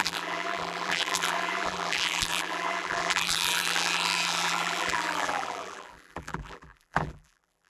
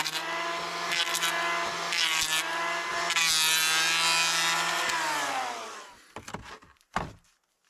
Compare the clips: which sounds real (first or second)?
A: second